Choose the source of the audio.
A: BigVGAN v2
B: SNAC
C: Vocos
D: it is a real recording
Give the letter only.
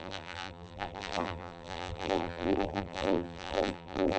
A